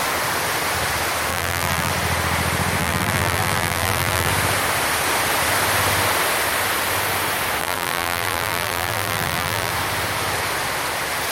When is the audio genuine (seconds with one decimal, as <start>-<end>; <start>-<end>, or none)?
0.0-1.3; 1.9-2.8; 4.3-7.6; 9.7-11.3